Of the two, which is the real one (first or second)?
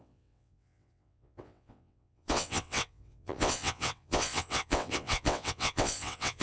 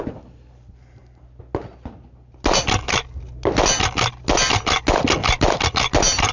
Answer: second